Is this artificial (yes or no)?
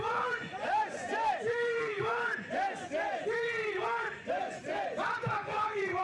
yes